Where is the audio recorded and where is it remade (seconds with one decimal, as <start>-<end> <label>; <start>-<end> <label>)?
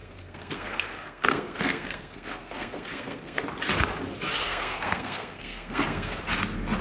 0.0-3.4 remade; 3.4-4.4 recorded; 4.4-6.2 remade; 6.2-6.8 recorded